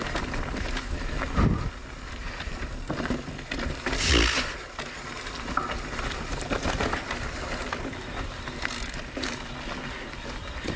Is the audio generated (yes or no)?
no